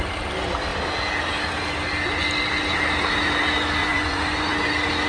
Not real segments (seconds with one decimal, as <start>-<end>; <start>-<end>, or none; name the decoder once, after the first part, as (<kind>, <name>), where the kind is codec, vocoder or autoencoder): 3.8-4.5 (vocoder, Vocos)

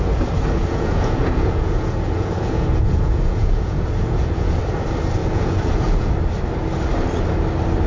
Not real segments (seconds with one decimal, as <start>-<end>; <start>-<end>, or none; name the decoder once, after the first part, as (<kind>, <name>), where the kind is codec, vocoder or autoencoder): 0.6-4.6 (vocoder, Vocos); 5.2-6.1

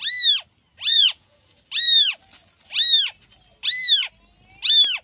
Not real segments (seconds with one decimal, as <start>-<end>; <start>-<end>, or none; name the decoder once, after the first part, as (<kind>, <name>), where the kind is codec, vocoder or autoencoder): 0.9-1.6 (vocoder, Vocos)

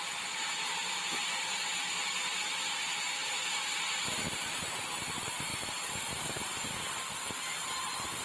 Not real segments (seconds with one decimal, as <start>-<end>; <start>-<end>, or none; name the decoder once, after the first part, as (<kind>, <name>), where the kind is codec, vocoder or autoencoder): none

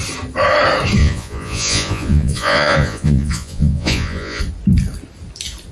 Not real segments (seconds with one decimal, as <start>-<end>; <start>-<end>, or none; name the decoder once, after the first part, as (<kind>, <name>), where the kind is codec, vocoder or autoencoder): 1.0-4.4 (vocoder, Vocos)

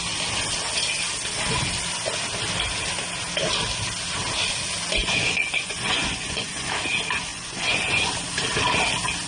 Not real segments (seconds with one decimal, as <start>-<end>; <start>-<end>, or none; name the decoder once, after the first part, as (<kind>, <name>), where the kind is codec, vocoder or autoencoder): 5.0-6.7 (vocoder, Vocos); 7.3-8.1